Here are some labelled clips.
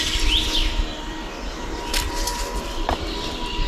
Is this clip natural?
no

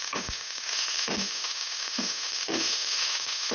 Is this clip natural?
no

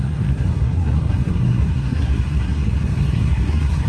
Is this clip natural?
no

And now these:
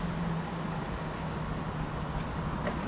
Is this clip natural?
yes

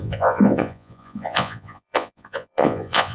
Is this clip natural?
no